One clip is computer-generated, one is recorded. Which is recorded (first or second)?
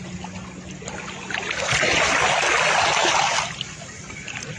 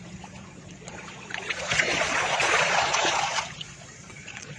first